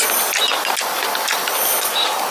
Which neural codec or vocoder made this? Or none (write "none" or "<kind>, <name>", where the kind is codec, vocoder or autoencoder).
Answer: none